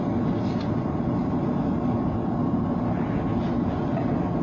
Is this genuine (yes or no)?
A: yes